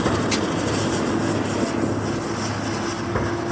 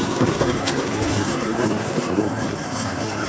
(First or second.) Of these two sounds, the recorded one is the first